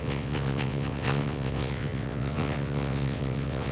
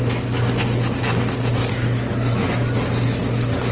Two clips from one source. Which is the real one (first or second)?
second